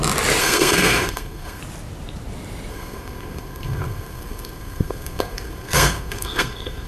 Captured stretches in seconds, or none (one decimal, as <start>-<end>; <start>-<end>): 0.0-0.4; 1.6-2.7